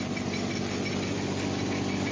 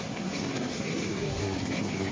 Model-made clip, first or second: second